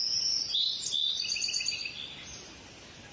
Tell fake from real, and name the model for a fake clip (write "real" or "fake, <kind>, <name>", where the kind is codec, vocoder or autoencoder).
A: real